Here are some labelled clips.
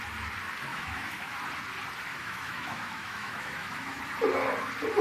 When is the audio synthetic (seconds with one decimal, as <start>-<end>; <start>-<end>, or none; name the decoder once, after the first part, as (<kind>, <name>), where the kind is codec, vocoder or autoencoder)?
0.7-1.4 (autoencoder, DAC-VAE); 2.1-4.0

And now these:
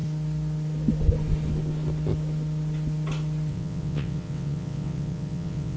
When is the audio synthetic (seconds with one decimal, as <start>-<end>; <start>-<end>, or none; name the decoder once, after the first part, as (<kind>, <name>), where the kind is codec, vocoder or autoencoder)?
3.5-5.8 (vocoder, WaveNeXt)

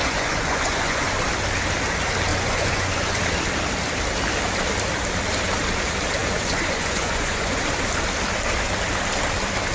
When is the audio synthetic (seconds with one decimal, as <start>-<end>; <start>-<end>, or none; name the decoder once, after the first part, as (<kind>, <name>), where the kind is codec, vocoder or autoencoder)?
0.0-1.1 (vocoder, Vocos); 2.3-3.2; 6.2-7.6

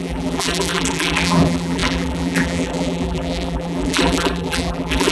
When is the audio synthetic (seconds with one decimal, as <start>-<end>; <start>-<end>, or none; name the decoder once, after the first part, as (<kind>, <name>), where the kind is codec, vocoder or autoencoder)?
0.0-5.1 (vocoder, BigVGAN v2)

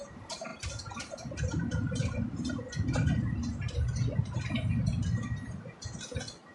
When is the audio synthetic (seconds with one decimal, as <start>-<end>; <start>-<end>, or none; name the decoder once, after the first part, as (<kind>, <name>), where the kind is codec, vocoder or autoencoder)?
none

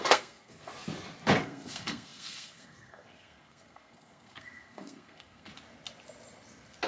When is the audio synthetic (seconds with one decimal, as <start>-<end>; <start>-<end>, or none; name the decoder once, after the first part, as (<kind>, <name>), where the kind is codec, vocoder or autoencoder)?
0.0-0.7 (codec, SNAC); 1.4-5.5